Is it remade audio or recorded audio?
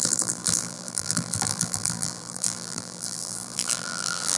remade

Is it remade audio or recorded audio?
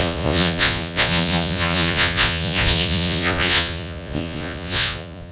remade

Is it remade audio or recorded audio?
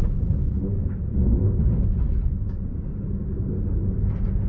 recorded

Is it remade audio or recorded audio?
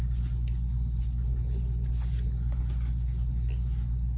recorded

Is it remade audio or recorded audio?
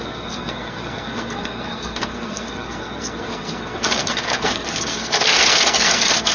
remade